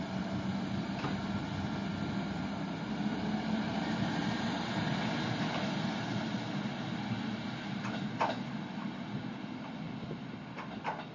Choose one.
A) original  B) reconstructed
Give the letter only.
A